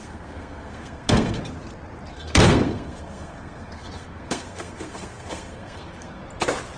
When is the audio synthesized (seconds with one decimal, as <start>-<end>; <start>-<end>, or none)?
0.0-1.4; 2.1-6.2